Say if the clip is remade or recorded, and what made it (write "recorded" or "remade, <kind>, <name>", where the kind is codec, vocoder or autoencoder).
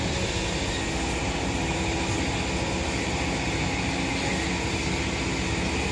recorded